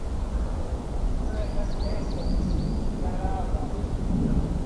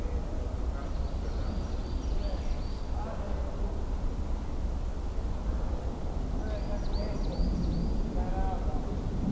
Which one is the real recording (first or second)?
second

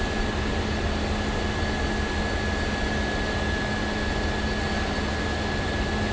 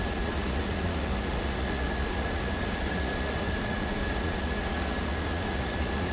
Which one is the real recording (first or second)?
first